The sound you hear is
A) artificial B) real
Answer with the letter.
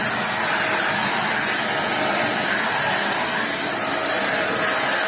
B